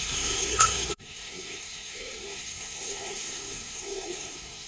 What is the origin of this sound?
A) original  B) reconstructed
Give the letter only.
B